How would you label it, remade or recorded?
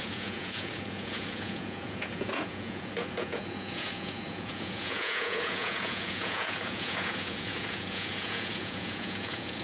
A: remade